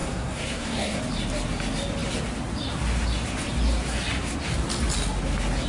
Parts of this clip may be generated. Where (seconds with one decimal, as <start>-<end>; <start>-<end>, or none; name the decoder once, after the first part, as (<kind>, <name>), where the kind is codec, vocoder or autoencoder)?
0.0-1.0 (codec, SNAC)